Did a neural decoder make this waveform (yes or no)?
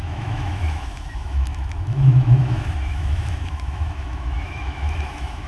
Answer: yes